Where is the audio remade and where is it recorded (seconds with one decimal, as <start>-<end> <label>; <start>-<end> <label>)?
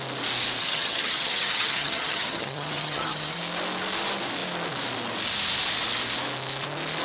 0.0-0.6 recorded; 0.6-3.4 remade; 3.4-7.0 recorded